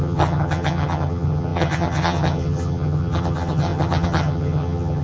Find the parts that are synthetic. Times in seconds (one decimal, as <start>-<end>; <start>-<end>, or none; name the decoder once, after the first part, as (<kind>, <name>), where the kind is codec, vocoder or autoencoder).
0.0-5.0 (vocoder, HiFi-GAN)